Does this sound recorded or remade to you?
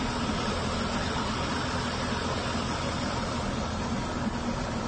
recorded